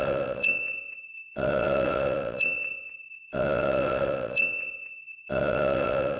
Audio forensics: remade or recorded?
remade